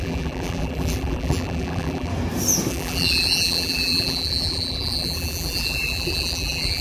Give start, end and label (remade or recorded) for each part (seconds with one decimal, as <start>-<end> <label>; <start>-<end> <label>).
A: 0.0-2.1 remade; 2.1-2.7 recorded; 2.7-6.8 remade